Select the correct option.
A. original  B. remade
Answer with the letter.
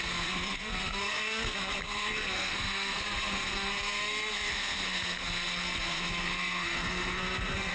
B